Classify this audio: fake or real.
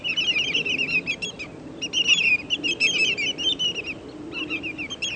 real